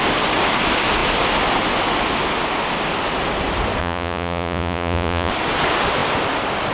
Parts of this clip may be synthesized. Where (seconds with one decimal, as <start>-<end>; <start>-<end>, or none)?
3.8-5.3